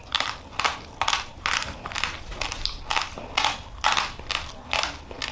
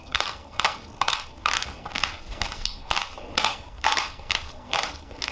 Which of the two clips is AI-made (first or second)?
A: second